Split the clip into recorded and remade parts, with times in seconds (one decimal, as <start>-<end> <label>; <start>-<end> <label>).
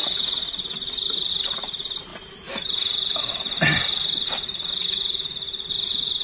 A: 0.0-6.2 recorded